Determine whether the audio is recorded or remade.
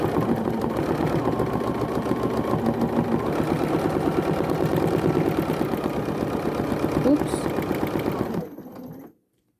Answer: recorded